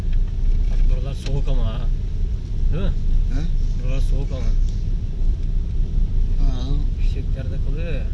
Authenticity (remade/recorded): recorded